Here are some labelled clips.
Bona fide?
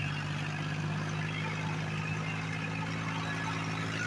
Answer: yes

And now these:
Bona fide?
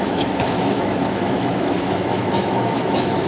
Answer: no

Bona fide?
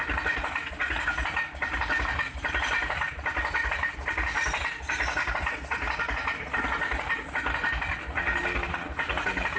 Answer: yes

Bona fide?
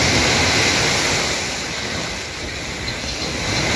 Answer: yes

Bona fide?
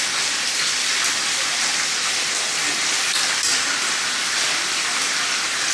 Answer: yes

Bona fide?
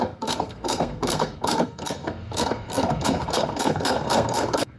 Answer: no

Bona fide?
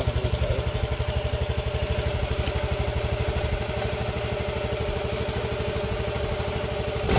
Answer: yes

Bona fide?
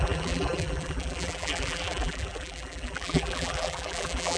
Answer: no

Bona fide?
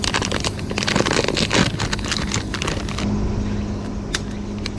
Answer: yes